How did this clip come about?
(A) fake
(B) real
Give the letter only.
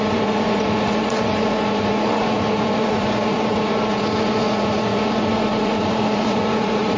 A